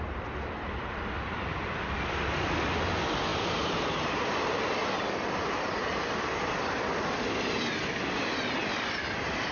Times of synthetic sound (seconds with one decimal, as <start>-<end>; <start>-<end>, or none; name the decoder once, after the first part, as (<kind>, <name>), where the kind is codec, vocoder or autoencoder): 3.3-4.6 (vocoder, BigVGAN v2); 8.6-9.5